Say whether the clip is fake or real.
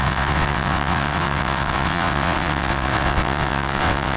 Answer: fake